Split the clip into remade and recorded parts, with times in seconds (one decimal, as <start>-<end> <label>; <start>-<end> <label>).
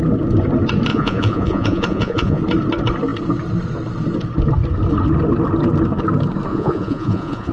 0.0-0.9 recorded; 0.9-2.4 remade; 2.4-6.5 recorded; 6.5-7.5 remade